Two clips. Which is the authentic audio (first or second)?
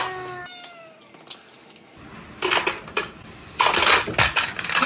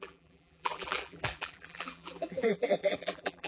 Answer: first